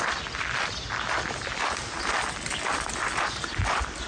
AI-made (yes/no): no